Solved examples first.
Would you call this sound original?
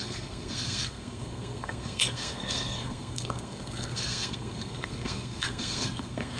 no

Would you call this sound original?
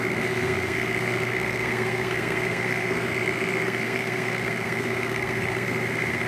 no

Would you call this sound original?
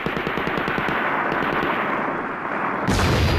yes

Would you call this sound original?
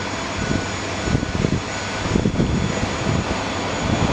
yes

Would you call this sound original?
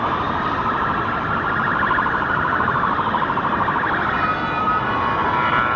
yes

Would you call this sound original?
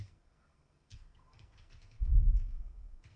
no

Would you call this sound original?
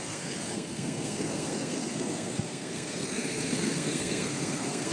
no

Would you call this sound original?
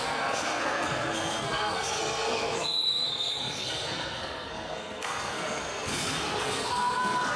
no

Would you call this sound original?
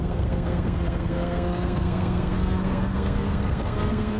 no